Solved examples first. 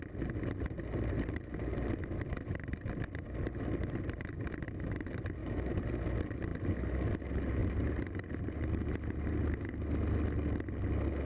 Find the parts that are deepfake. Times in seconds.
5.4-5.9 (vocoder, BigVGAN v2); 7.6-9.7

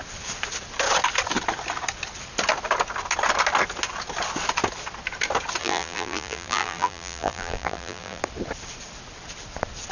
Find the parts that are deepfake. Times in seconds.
5.6-8.2 (vocoder, BigVGAN v2)

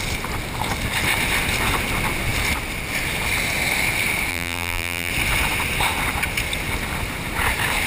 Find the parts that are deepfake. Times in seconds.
4.3-5.1 (vocoder, BigVGAN v2)

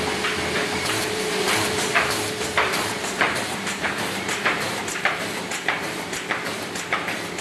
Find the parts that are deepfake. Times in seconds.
0.6-4.8 (vocoder, BigVGAN v2)

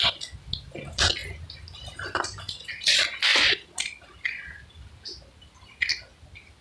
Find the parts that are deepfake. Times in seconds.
none

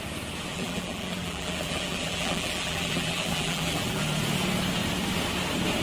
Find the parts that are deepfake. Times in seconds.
0.5-4.0 (vocoder, BigVGAN v2)

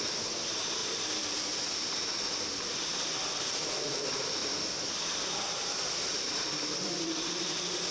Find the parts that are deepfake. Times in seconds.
0.0-0.8 (vocoder, BigVGAN v2); 3.9-4.4; 6.4-7.9

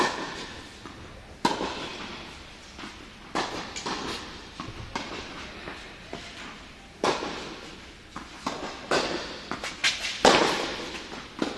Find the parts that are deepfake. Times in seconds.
1.9-5.3 (vocoder, BigVGAN v2)